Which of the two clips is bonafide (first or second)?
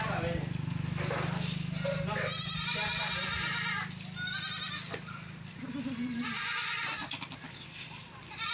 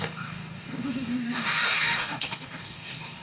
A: first